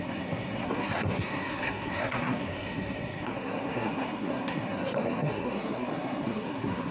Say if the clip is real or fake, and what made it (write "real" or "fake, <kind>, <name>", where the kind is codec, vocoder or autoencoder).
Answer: fake, codec, SNAC